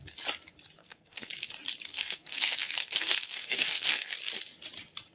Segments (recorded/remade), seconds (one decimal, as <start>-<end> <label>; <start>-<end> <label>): 0.0-0.8 recorded; 0.8-1.5 remade; 1.5-1.9 recorded; 1.9-4.2 remade; 4.2-5.1 recorded